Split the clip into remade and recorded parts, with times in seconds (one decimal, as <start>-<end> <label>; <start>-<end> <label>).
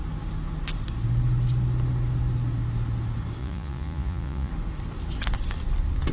0.0-3.4 recorded; 3.4-4.5 remade; 4.5-6.1 recorded